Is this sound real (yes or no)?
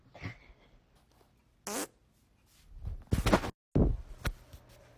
yes